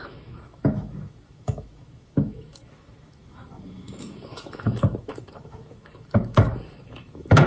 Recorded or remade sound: remade